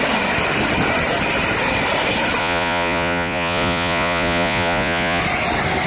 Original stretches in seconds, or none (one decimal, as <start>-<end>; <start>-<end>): 0.0-2.4; 5.2-5.9